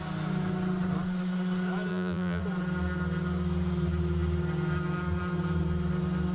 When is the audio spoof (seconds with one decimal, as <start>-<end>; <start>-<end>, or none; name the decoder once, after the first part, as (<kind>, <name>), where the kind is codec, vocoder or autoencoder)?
1.9-2.4 (vocoder, BigVGAN v2)